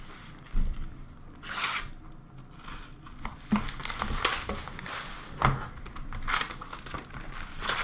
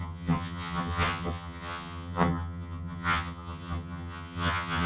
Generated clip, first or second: second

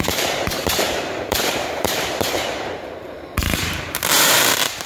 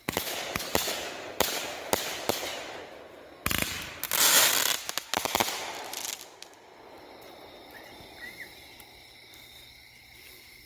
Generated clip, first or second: first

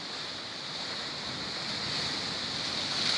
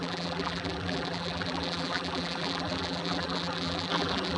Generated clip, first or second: second